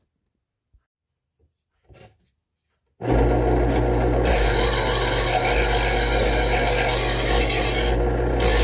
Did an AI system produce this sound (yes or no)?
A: no